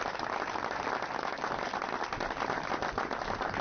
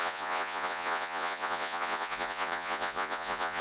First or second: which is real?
first